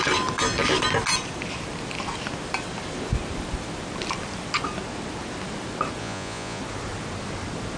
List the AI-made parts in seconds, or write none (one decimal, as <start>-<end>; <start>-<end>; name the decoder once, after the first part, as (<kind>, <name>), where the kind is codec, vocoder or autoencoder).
6.0-6.6 (vocoder, Vocos)